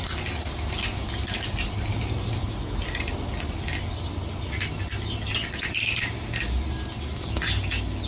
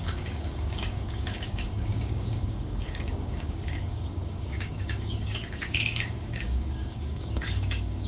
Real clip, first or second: first